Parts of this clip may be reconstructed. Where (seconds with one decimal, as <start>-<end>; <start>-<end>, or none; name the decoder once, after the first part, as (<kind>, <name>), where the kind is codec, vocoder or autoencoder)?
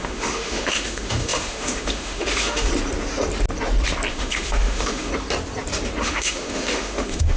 0.0-2.7 (autoencoder, DAC-VAE); 4.1-5.1; 6.0-7.4